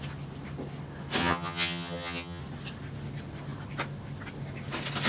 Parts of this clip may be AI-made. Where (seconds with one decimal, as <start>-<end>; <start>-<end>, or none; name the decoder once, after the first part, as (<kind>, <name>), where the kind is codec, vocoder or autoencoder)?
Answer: 1.2-2.4 (vocoder, HiFi-GAN)